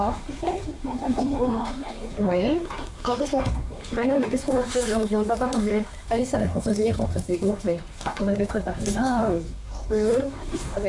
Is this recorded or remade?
remade